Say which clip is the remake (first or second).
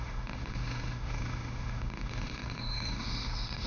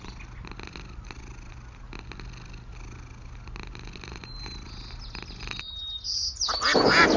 first